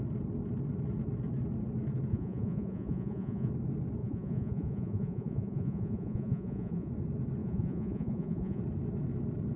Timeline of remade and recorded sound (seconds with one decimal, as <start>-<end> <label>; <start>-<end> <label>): 0.0-2.1 recorded; 2.1-3.5 remade; 3.5-4.0 recorded; 4.0-6.9 remade; 6.9-7.4 recorded; 7.4-8.6 remade; 8.6-9.6 recorded